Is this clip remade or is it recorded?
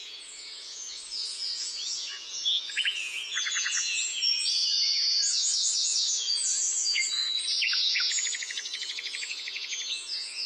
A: remade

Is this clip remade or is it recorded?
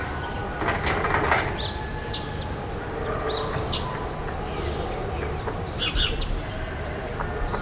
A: recorded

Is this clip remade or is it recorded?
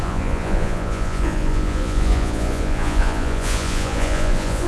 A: remade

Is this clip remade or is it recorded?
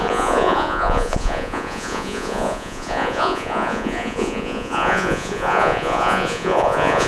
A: remade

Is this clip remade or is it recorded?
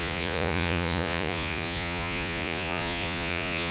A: remade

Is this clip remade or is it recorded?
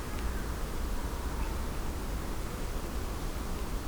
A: recorded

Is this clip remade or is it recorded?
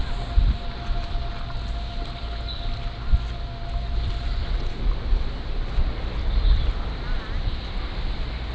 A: recorded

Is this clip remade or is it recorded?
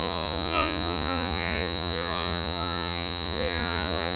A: remade